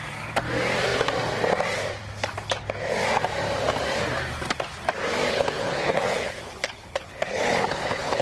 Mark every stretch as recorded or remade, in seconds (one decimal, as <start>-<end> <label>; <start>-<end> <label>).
0.0-5.3 recorded; 5.3-8.2 remade